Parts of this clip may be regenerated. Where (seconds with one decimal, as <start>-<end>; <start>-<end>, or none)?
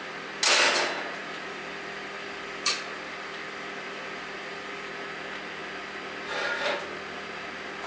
1.2-4.9